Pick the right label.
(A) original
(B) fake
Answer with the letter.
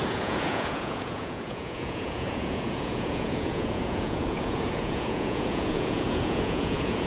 B